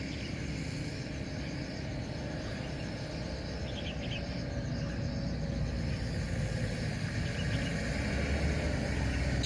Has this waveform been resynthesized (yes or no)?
no